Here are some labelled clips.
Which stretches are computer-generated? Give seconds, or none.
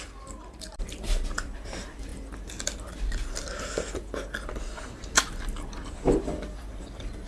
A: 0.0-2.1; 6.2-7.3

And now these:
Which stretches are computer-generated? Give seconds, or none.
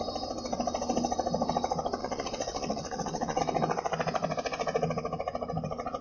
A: 2.0-3.4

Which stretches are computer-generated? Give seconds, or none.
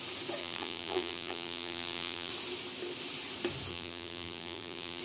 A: 0.4-2.3; 3.7-5.0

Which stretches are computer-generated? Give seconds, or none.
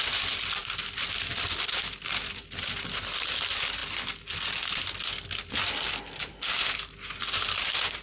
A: none